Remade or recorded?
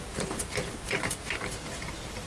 remade